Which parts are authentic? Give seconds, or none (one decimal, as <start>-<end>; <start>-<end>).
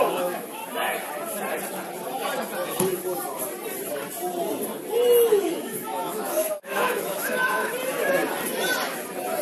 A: 0.6-5.3; 7.7-9.4